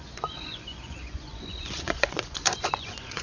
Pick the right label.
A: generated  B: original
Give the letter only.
A